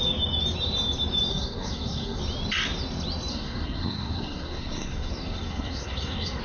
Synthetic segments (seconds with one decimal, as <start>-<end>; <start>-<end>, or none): 1.3-2.2; 3.3-6.4